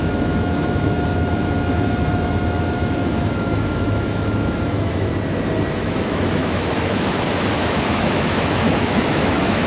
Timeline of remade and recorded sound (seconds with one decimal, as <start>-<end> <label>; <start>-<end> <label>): 0.0-5.1 remade; 5.1-5.7 recorded; 5.7-9.7 remade